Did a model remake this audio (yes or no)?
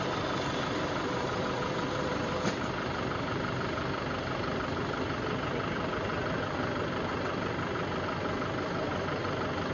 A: no